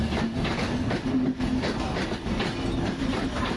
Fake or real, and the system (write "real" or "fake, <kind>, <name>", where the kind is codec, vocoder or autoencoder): real